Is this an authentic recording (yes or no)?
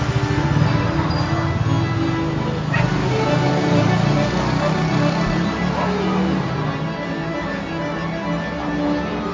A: yes